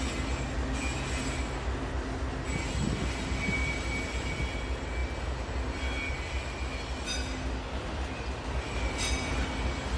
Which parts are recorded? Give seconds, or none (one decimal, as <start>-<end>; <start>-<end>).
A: 0.0-10.0